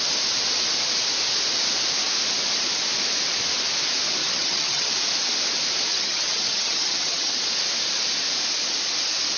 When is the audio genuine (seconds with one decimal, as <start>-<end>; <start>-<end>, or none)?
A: 0.0-4.2; 4.9-5.9; 7.4-9.4